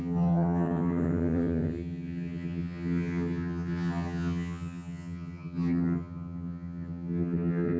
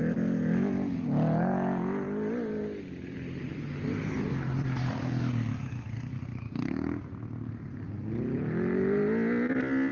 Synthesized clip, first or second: first